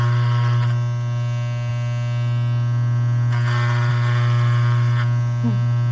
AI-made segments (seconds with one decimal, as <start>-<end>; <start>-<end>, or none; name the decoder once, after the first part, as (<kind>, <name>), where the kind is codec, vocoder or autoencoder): none